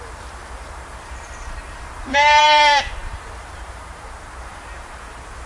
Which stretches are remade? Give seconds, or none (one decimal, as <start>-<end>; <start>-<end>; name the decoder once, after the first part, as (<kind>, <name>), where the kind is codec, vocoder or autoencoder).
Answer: 0.0-5.5 (vocoder, BigVGAN v2)